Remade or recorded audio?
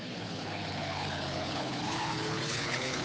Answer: remade